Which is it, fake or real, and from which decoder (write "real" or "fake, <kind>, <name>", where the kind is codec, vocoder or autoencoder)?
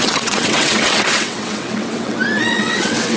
fake, vocoder, WaveNeXt